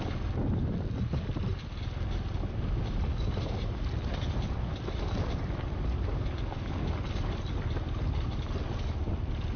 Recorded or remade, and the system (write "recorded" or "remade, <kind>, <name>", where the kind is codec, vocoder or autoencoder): recorded